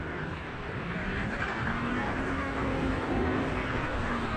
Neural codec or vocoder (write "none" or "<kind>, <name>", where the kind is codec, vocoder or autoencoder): codec, DAC